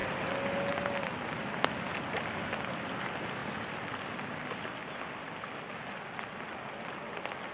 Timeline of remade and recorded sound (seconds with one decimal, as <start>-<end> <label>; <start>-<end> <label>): 0.0-7.5 recorded

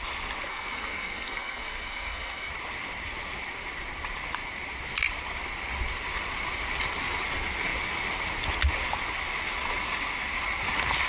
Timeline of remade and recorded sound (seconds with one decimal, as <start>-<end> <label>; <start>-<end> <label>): 0.0-0.5 recorded; 0.5-2.5 remade; 2.5-11.1 recorded

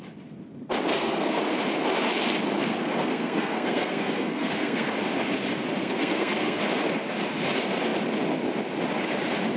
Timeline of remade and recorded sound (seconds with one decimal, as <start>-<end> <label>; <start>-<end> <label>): 0.0-0.9 recorded; 0.9-1.4 remade; 1.4-2.6 recorded; 2.6-4.9 remade; 4.9-5.8 recorded; 5.8-6.6 remade; 6.6-9.6 recorded

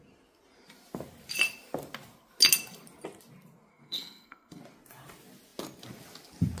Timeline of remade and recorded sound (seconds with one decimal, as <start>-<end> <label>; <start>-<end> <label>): 0.0-3.7 recorded; 3.7-4.6 remade; 4.6-6.6 recorded

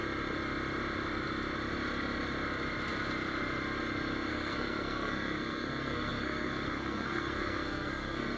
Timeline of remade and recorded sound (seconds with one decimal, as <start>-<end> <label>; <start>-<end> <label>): 0.0-4.3 recorded; 4.3-8.4 remade

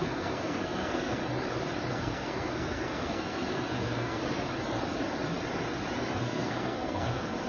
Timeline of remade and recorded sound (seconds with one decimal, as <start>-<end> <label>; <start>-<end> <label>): 0.0-1.2 remade; 1.2-1.9 recorded; 1.9-4.2 remade; 4.2-6.2 recorded; 6.2-7.5 remade